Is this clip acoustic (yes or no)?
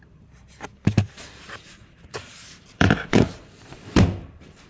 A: no